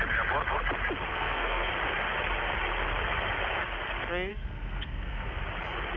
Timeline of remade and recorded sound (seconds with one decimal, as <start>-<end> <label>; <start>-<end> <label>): 0.0-1.1 recorded; 1.1-1.7 remade; 1.7-4.3 recorded; 4.3-5.4 remade; 5.4-6.0 recorded